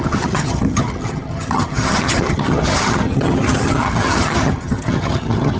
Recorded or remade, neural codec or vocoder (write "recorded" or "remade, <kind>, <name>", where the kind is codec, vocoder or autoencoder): remade, vocoder, HiFi-GAN